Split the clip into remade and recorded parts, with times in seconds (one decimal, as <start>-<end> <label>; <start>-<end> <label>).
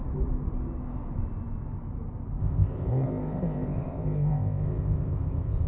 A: 0.0-2.4 recorded; 2.4-5.7 remade